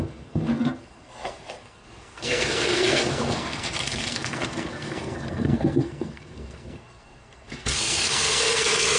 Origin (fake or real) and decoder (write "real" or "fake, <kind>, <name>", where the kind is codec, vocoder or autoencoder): fake, codec, SNAC